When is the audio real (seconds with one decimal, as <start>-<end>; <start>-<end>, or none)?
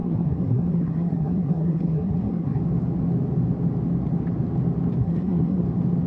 2.6-5.0; 5.6-6.1